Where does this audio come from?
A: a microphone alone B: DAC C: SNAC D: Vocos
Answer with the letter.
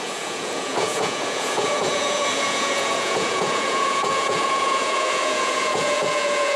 D